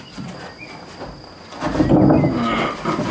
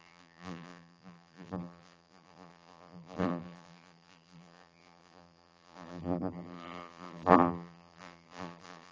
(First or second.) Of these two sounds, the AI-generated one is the second